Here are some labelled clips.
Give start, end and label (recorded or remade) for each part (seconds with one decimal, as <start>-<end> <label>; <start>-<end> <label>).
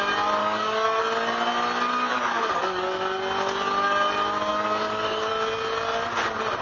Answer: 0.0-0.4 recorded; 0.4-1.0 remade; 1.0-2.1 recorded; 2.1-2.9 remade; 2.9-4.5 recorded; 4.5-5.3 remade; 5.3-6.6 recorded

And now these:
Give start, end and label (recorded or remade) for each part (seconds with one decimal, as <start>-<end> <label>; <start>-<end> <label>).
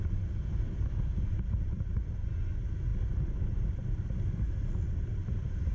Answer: 0.0-5.7 recorded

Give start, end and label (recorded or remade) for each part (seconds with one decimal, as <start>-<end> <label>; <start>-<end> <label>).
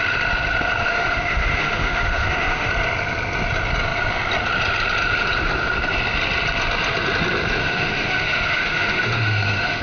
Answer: 0.0-0.8 recorded; 0.8-2.7 remade; 2.7-7.6 recorded; 7.6-9.8 remade